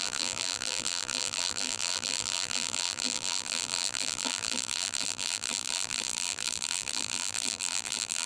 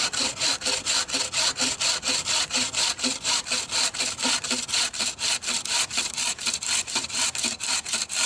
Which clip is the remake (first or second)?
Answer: first